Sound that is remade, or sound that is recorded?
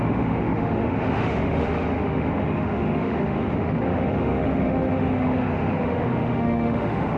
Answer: remade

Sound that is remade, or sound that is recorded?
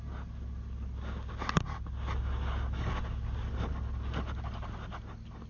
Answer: recorded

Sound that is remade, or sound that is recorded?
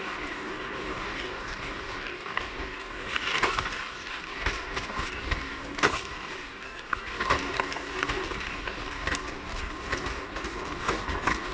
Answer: remade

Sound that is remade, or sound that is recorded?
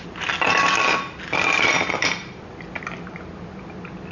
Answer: recorded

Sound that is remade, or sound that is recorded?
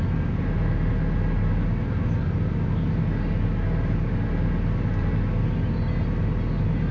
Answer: recorded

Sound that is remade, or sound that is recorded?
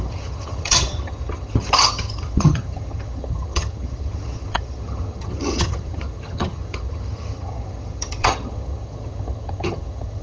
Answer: remade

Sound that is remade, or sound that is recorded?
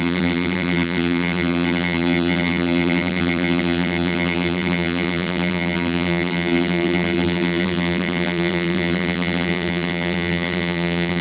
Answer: remade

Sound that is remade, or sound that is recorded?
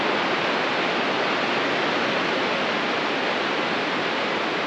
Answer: recorded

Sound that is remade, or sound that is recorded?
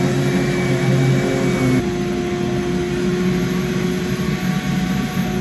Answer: recorded